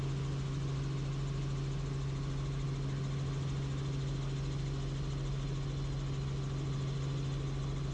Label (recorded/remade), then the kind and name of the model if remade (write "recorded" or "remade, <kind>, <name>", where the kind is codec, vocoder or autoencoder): recorded